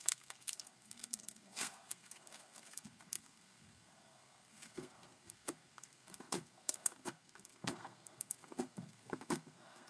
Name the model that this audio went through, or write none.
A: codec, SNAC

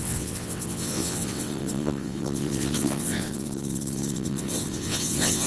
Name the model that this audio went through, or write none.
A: vocoder, WaveNeXt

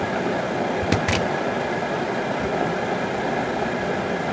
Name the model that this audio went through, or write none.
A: none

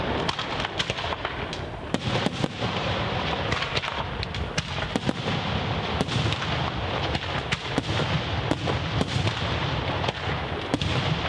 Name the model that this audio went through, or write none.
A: none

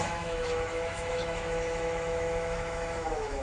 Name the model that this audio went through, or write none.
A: autoencoder, DAC-VAE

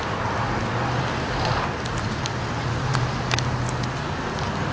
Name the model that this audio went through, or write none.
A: none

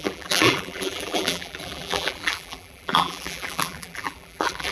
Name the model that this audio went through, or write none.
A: vocoder, BigVGAN v2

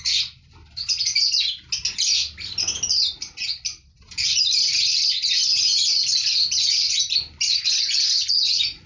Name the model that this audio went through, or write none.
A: none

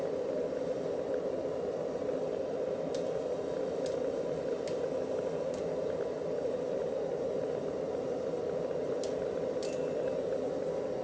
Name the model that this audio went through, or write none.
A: none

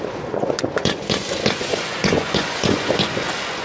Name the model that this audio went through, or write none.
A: vocoder, Vocos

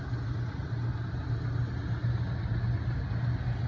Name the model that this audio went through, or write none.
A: none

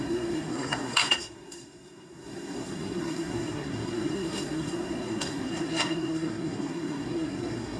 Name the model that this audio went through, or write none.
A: codec, SNAC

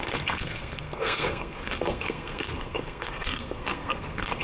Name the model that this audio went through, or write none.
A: codec, SNAC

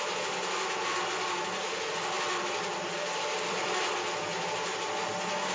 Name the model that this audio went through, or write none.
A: none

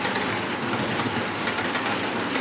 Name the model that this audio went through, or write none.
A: none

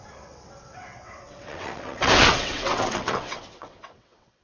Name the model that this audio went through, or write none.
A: vocoder, WaveNeXt